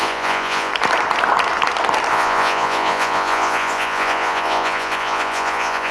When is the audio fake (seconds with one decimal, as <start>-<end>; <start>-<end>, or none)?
0.0-0.7; 2.1-5.9